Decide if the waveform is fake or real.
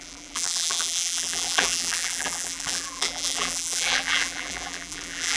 fake